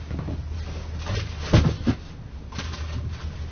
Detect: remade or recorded recorded